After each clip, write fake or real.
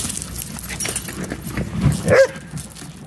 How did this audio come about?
real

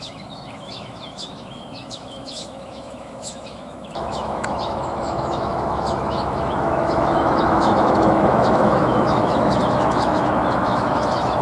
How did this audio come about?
fake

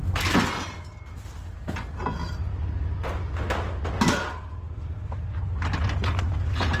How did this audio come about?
real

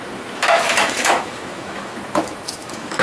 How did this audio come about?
fake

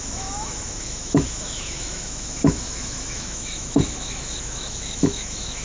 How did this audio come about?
fake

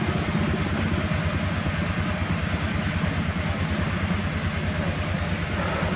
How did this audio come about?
real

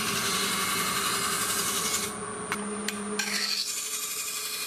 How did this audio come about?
real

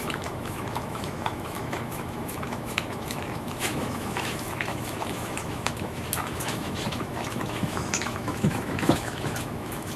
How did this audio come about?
fake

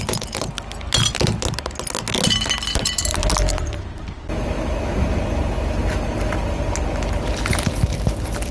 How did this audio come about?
real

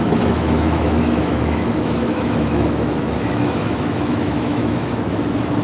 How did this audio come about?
fake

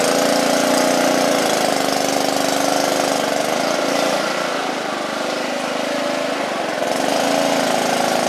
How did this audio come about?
real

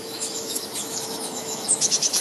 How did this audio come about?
fake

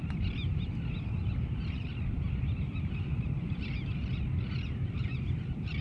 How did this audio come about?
real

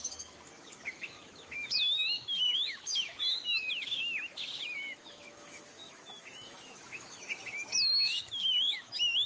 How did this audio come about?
fake